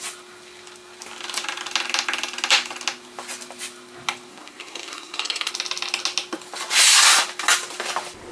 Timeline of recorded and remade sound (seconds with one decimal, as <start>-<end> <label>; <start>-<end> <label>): 0.0-4.3 recorded; 4.3-5.5 remade; 5.5-8.3 recorded